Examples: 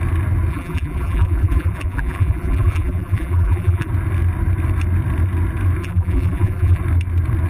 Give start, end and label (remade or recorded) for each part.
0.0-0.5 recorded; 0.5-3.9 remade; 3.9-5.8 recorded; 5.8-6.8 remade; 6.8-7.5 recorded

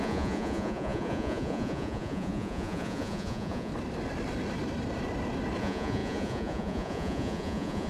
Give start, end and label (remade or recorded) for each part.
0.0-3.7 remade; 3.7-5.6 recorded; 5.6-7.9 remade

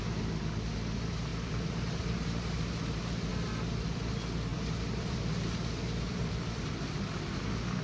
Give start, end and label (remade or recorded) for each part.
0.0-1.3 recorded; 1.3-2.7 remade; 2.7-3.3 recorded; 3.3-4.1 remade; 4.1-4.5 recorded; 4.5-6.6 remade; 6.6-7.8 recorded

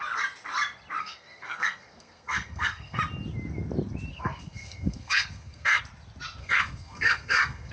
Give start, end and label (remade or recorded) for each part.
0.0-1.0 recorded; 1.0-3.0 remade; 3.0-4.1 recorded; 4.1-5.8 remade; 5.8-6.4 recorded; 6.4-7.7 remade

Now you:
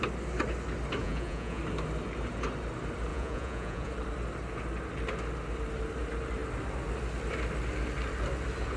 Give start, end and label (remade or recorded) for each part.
0.0-1.0 recorded; 1.0-1.6 remade; 1.6-3.1 recorded; 3.1-3.9 remade; 3.9-8.8 recorded